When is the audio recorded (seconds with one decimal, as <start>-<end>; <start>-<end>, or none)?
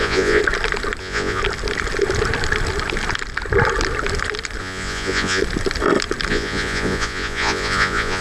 0.4-1.0; 1.4-4.6; 5.4-6.3